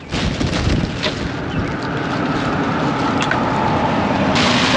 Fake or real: real